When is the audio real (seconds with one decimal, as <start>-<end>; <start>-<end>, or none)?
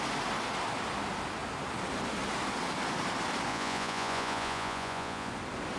0.0-3.5; 5.3-5.8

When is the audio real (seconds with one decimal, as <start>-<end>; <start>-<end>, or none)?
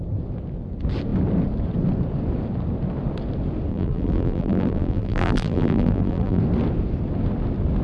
0.0-3.7; 6.4-7.8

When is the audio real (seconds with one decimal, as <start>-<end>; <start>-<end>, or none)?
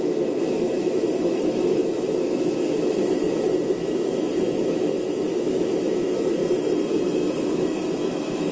6.4-6.9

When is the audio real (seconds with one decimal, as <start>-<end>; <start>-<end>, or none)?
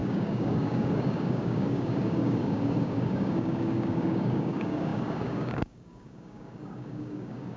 none